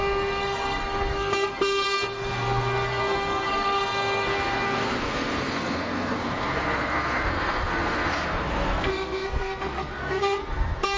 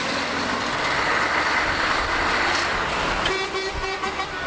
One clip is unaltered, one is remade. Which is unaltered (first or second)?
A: second